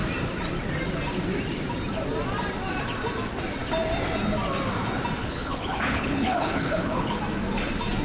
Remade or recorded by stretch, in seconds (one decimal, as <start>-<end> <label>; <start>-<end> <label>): 0.0-5.2 recorded; 5.2-7.2 remade; 7.2-8.0 recorded

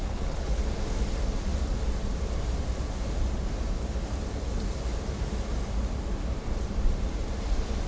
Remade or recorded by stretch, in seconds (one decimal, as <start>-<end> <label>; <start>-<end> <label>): 0.0-0.6 remade; 0.6-7.9 recorded

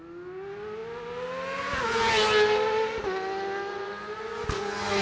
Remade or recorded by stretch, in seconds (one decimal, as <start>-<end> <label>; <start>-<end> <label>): 0.0-5.0 recorded

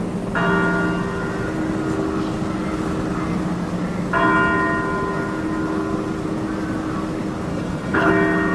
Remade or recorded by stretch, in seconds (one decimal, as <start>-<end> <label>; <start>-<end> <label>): 0.0-7.5 recorded; 7.5-8.1 remade; 8.1-8.5 recorded

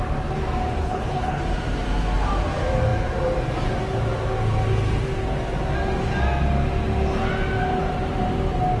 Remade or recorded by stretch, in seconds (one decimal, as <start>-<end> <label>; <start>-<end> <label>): 0.0-0.8 recorded; 0.8-1.4 remade; 1.4-8.8 recorded